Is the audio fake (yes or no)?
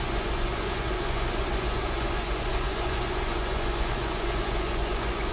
yes